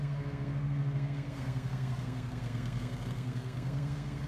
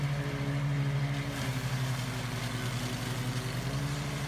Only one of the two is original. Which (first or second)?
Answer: second